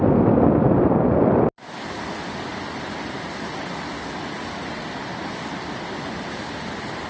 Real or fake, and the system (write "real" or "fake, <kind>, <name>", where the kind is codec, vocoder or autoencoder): real